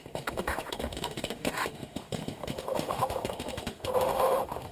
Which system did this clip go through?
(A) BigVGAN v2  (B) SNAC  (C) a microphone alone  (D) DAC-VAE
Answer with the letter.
D